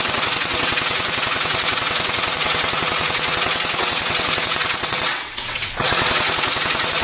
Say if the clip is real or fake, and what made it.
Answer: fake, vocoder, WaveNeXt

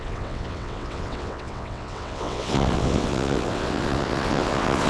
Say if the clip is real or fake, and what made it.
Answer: fake, vocoder, WaveNeXt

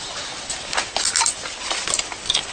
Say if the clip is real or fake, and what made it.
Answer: real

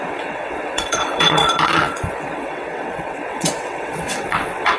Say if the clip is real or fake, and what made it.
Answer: fake, vocoder, WaveNeXt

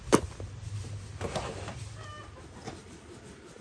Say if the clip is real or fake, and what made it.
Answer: real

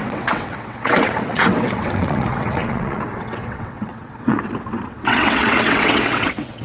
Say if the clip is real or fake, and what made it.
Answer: fake, vocoder, WaveNeXt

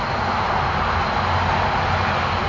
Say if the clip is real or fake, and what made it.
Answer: real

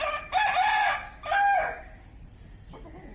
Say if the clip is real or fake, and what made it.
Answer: real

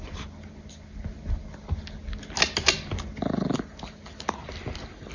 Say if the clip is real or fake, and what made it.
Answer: real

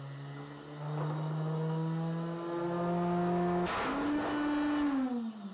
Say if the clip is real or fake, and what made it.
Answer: real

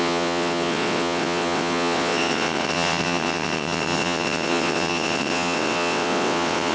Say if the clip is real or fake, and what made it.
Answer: fake, vocoder, WaveNeXt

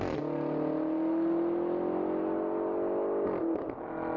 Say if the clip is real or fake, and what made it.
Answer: real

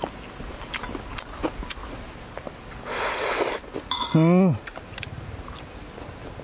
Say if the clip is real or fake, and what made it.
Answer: real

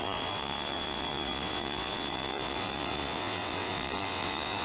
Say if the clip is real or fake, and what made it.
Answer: fake, vocoder, WaveNeXt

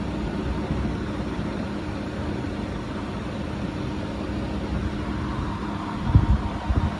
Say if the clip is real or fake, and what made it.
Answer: real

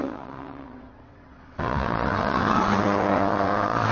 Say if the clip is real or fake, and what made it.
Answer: fake, vocoder, WaveNeXt